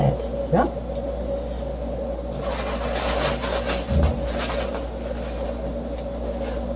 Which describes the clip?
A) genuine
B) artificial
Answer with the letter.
A